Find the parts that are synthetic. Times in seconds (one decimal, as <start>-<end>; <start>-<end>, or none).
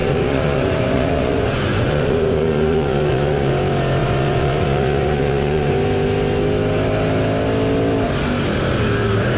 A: 0.0-3.5; 4.0-5.7